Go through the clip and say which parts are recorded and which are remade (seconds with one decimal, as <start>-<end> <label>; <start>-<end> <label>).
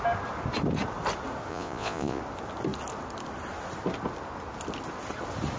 0.0-1.5 recorded; 1.5-2.2 remade; 2.2-5.6 recorded